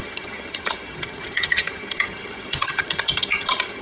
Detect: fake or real fake